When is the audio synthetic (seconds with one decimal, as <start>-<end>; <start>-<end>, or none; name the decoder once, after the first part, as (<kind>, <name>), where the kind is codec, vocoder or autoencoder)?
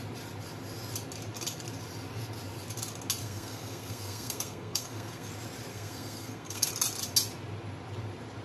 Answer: 3.2-5.3 (codec, SNAC); 5.7-6.7